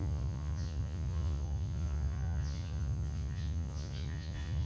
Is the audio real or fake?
fake